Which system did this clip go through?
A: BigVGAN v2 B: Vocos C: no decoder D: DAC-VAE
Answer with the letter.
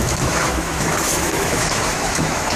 D